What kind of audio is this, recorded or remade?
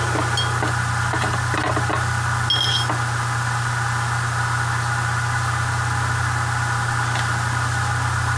recorded